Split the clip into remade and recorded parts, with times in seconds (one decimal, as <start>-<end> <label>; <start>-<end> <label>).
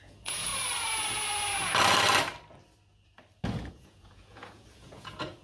0.0-0.5 remade; 0.5-3.7 recorded; 3.7-5.4 remade